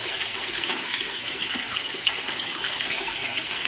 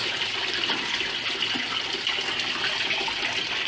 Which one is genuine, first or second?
second